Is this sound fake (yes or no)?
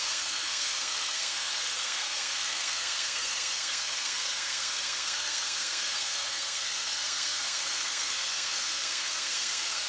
yes